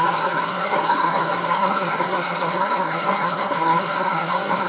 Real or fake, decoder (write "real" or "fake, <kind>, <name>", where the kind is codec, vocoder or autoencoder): fake, codec, SNAC